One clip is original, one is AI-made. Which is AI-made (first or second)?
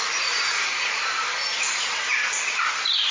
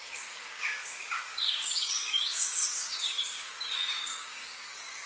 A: second